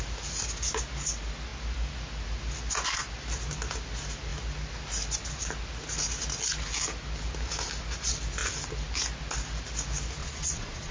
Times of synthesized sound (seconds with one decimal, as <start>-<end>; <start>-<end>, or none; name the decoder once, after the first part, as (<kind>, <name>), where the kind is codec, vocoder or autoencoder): 10.2-10.9 (vocoder, Vocos)